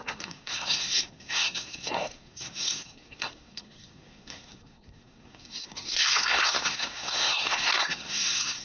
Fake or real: fake